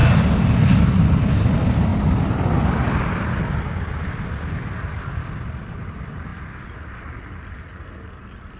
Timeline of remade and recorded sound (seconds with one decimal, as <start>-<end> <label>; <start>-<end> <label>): 0.0-8.6 recorded